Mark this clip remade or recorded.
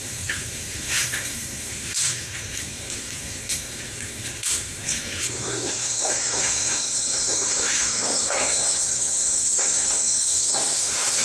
remade